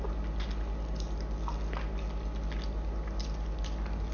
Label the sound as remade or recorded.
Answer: recorded